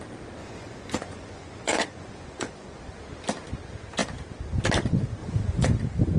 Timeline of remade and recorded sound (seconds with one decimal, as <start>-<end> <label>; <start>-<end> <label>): 0.0-0.4 recorded; 0.4-2.8 remade; 2.8-5.2 recorded; 5.2-5.7 remade; 5.7-6.2 recorded